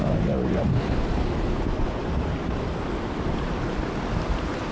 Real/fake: real